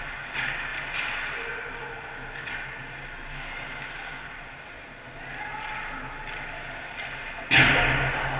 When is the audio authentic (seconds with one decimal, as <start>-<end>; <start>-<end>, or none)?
0.0-8.4